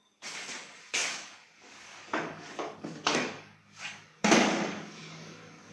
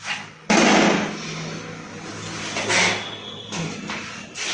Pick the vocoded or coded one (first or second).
first